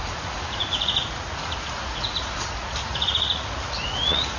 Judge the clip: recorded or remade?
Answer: remade